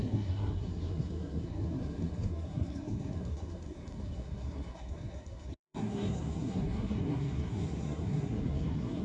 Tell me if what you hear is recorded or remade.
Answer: remade